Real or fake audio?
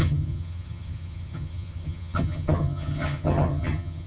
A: fake